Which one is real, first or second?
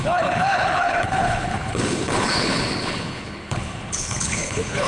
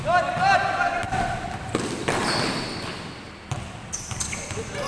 second